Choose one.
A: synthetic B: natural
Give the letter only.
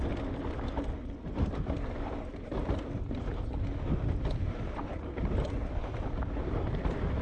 B